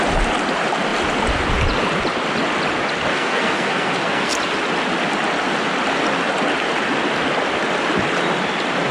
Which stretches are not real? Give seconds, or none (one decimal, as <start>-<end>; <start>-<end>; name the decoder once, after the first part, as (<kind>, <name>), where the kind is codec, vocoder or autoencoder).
3.1-4.3 (codec, SNAC)